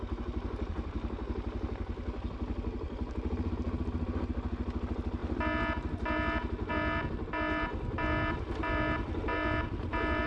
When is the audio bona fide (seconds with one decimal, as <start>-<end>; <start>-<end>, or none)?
0.0-10.3